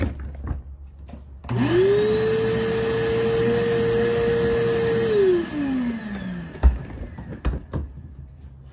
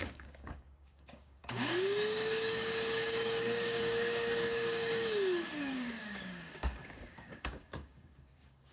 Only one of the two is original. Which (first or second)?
first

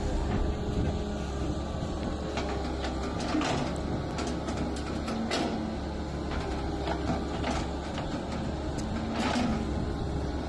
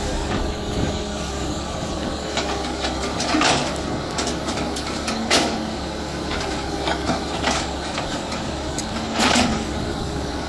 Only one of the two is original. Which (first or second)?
first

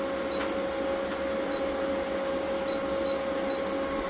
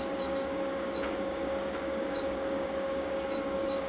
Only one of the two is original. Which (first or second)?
first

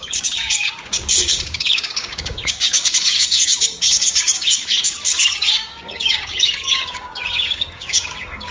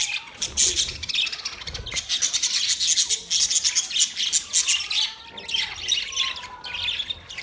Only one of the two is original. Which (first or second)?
second